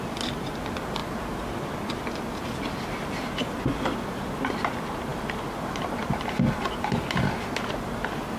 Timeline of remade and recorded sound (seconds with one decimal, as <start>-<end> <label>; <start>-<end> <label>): 0.0-8.4 recorded